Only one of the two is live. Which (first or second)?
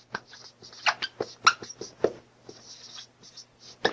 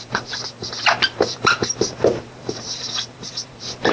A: first